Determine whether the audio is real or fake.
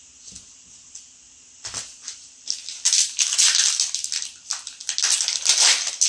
real